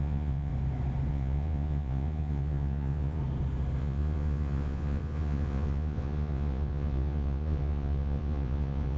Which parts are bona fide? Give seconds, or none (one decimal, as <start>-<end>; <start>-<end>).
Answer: 0.5-1.1; 3.2-3.8

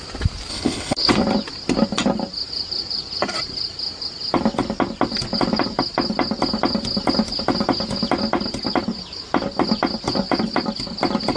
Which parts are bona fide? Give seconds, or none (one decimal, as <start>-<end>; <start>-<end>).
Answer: 0.0-0.5; 1.1-11.4

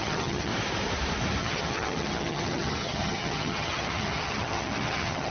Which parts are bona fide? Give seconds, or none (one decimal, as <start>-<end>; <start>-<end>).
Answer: 0.5-1.4

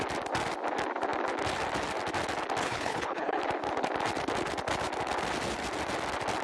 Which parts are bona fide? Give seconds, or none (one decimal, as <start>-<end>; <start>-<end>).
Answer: 0.0-2.6; 3.4-6.4

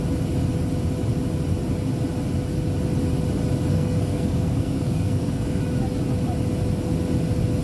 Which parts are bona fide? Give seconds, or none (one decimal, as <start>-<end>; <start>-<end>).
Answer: 0.0-3.7; 5.6-7.6

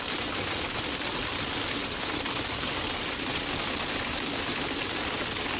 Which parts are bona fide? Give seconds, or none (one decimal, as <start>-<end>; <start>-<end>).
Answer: none

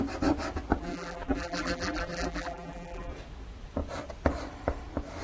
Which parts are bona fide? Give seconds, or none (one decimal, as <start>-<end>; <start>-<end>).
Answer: 0.0-0.8; 3.1-5.2